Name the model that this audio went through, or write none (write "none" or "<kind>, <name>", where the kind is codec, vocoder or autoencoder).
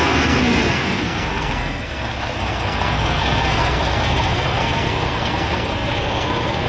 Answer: codec, SNAC